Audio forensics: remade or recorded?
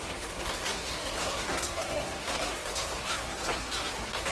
remade